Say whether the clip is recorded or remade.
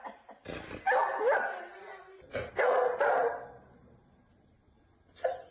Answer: recorded